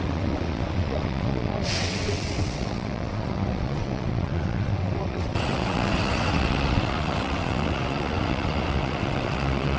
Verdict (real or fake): fake